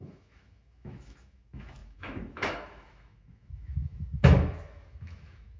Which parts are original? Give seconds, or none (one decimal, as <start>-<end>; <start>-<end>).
none